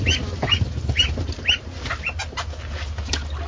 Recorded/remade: recorded